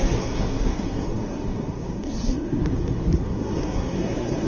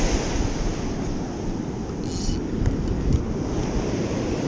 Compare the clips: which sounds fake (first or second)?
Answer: first